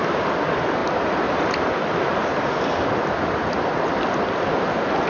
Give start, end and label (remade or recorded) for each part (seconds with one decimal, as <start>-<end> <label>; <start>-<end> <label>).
0.0-5.1 recorded